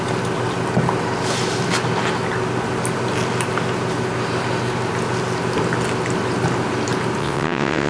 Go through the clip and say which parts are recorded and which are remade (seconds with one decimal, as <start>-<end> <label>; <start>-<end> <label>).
0.0-7.2 recorded; 7.2-7.9 remade